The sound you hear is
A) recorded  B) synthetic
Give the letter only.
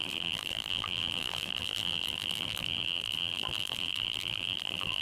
B